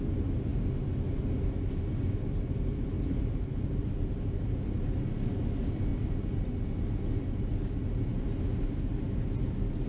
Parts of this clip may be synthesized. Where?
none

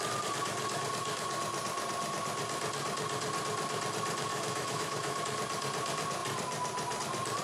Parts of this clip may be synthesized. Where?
4.3-5.2 (autoencoder, DAC-VAE)

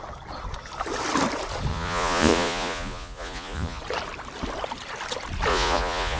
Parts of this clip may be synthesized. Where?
1.7-3.8 (vocoder, Vocos); 5.5-6.2

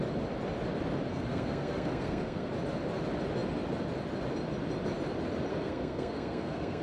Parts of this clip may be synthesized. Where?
1.1-2.5 (codec, SNAC); 5.5-6.8

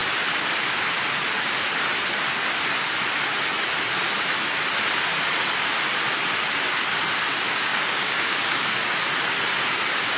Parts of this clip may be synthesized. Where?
7.3-8.9 (codec, DAC)

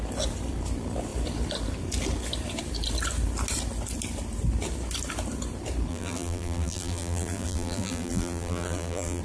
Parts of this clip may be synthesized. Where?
5.9-9.2 (vocoder, BigVGAN v2)

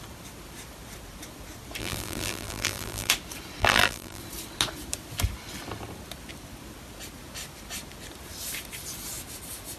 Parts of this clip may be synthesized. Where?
1.8-3.1 (vocoder, BigVGAN v2); 3.6-4.2

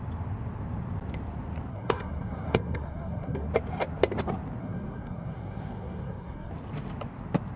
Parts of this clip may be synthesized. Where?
1.7-3.5 (codec, SNAC); 4.6-6.5